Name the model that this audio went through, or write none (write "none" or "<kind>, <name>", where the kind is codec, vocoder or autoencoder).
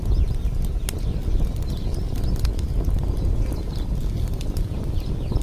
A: none